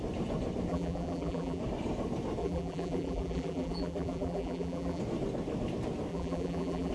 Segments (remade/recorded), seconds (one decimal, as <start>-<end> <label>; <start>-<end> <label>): 0.0-0.7 recorded; 0.7-1.6 remade; 1.6-2.4 recorded; 2.4-5.0 remade; 5.0-6.1 recorded; 6.1-6.9 remade